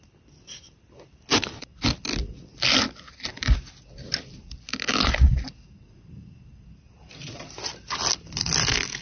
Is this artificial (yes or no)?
no